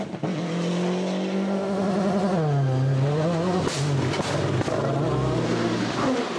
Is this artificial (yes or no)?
no